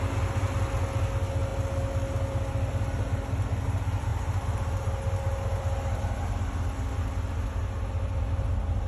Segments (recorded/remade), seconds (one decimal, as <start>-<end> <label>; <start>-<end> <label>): 0.0-8.9 recorded